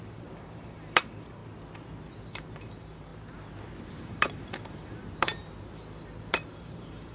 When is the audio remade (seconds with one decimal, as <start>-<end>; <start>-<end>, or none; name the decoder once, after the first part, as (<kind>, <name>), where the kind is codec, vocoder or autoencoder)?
0.0-1.4 (vocoder, BigVGAN v2); 2.3-3.1; 3.8-5.4; 6.3-7.1